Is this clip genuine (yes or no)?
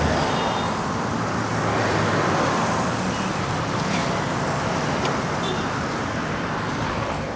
yes